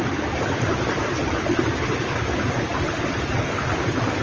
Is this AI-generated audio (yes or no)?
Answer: no